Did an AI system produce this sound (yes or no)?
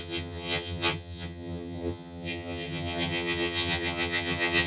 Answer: yes